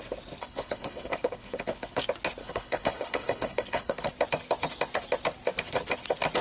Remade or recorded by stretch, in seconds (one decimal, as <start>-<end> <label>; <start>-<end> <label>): 0.0-0.4 recorded; 0.4-2.0 remade; 2.0-2.4 recorded; 2.4-4.1 remade; 4.1-6.4 recorded